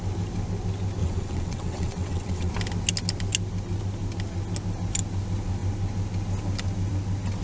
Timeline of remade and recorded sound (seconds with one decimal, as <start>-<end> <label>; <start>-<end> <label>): 0.0-1.0 recorded; 1.0-2.5 remade; 2.5-7.4 recorded